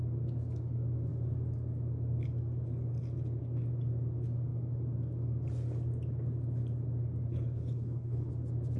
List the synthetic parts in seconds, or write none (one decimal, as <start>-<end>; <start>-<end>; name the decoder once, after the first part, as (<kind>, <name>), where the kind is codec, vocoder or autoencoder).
7.3-8.3 (codec, HILCodec)